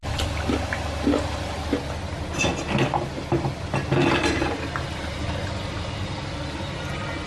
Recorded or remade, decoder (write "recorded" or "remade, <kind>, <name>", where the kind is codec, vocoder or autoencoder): recorded